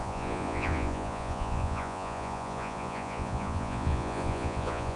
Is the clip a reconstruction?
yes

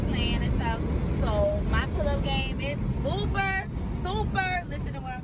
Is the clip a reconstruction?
no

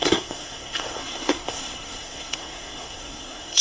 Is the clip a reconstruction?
yes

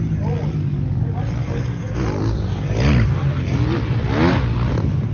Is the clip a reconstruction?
no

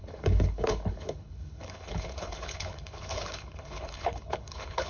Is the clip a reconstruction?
yes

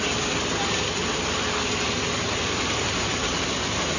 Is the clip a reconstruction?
no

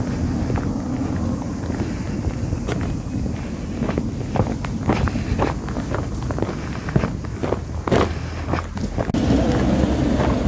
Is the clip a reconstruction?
no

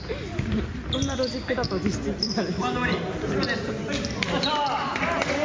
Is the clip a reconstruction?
no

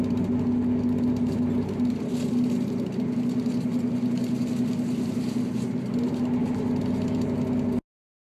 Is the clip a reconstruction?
no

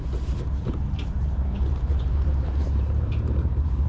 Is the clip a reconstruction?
yes